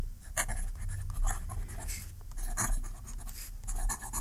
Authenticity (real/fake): real